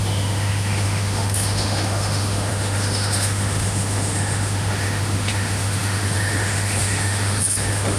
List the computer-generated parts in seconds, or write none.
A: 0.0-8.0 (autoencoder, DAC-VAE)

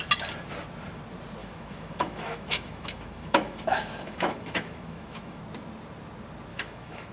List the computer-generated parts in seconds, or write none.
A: 1.4-5.4 (autoencoder, DAC-VAE); 6.5-7.1

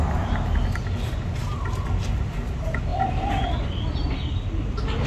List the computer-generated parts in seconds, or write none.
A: none

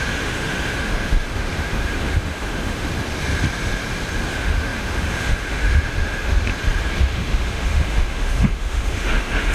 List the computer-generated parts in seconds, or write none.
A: 0.0-2.9 (autoencoder, DAC-VAE); 4.3-6.5; 7.0-9.5

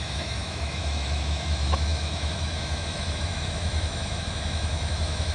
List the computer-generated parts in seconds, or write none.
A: 0.0-5.3 (autoencoder, DAC-VAE)

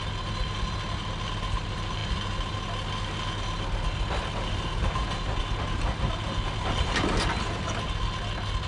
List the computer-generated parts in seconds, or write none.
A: none

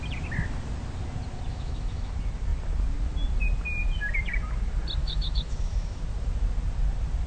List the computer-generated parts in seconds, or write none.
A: 1.5-2.1 (autoencoder, DAC-VAE); 5.0-6.0